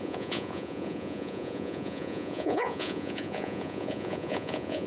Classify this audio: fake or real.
fake